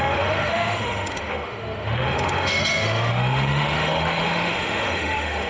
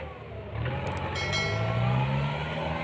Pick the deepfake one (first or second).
first